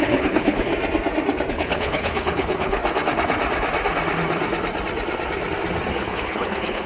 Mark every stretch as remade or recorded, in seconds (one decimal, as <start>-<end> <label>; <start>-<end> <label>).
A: 0.0-0.7 remade; 0.7-1.5 recorded; 1.5-2.8 remade; 2.8-5.9 recorded; 5.9-6.9 remade